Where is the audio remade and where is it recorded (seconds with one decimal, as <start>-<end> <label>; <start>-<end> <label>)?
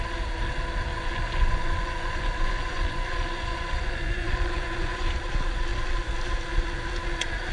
0.0-0.9 recorded; 0.9-5.1 remade; 5.1-7.5 recorded